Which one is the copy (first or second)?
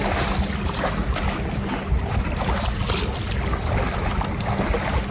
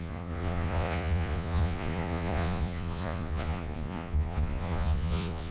second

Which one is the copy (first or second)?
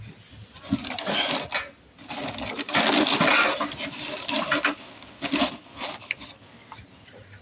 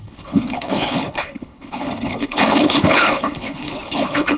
second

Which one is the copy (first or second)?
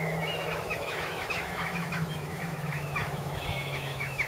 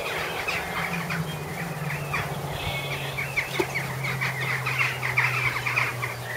first